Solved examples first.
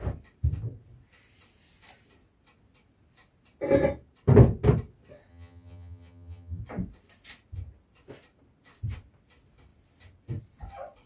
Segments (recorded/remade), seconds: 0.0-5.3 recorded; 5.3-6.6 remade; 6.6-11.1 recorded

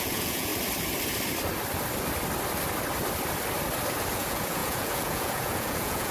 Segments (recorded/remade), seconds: 0.0-0.5 remade; 0.5-4.1 recorded; 4.1-6.1 remade

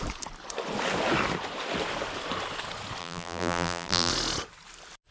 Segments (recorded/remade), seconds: 0.0-3.0 recorded; 3.0-4.1 remade; 4.1-5.1 recorded

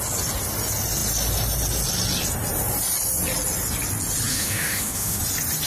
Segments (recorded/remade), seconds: 0.0-4.3 recorded; 4.3-5.2 remade; 5.2-5.7 recorded

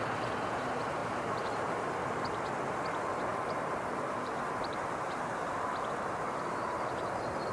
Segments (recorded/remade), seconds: 0.0-1.0 recorded; 1.0-2.4 remade; 2.4-3.3 recorded; 3.3-4.8 remade; 4.8-7.5 recorded

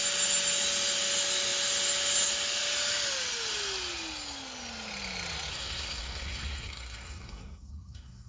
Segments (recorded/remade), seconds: 0.0-5.5 recorded; 5.5-8.3 remade

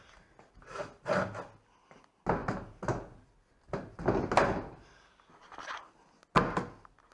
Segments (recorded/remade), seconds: 0.0-7.1 recorded